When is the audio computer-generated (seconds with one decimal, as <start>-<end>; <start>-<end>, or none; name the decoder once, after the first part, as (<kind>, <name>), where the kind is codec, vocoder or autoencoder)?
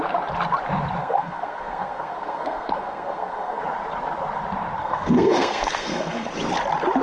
1.0-3.6 (codec, SNAC); 4.8-6.3